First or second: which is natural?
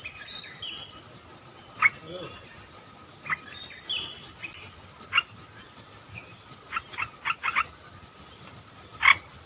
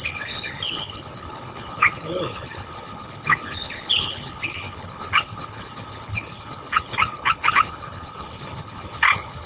first